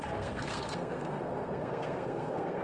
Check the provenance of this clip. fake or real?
fake